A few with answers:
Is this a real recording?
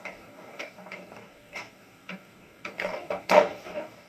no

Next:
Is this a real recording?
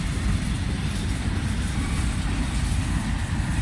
yes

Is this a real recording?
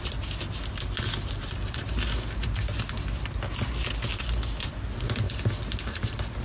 yes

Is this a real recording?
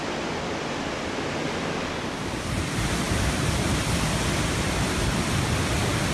yes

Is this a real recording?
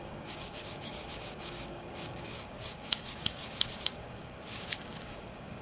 no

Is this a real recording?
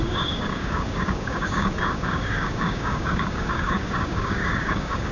no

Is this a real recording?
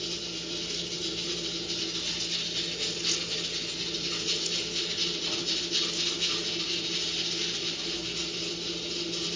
yes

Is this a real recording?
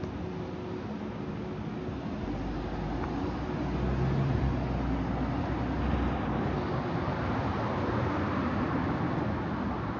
yes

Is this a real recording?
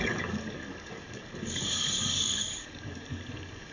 no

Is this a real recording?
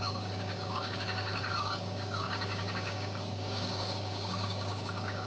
no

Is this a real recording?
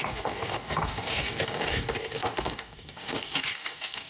no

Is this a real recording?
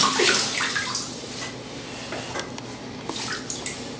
yes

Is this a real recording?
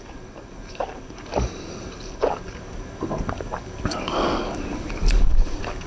no